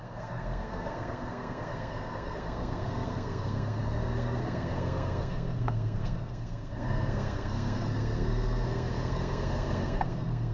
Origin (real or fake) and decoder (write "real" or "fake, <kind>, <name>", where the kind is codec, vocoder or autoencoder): fake, codec, SNAC